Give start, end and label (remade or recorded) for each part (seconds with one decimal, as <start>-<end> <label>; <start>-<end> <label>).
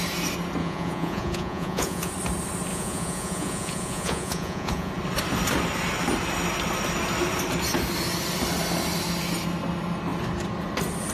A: 0.0-0.6 recorded; 0.6-2.1 remade; 2.1-2.7 recorded; 2.7-4.9 remade; 4.9-11.1 recorded